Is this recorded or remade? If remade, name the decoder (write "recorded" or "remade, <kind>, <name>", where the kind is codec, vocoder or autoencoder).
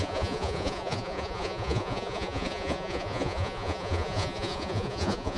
remade, vocoder, Vocos